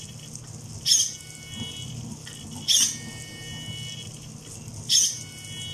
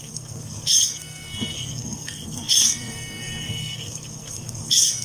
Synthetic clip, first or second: second